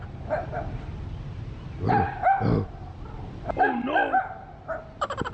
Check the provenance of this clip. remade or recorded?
recorded